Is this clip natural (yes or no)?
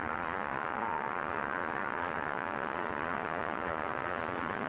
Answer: no